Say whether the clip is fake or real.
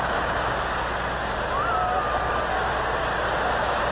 real